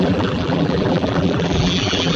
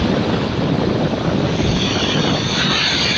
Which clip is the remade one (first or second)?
first